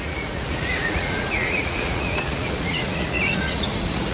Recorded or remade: remade